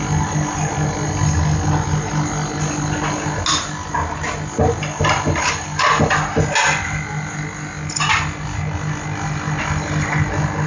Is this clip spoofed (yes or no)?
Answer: no